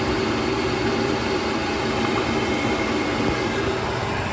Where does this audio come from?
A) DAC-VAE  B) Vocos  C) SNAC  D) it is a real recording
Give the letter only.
D